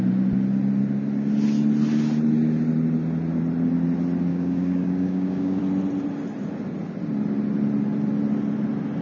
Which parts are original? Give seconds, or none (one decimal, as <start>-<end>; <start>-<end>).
0.0-4.3; 5.6-9.0